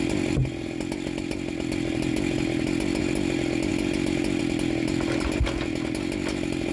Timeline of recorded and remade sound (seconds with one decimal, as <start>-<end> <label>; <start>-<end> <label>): 0.0-6.7 recorded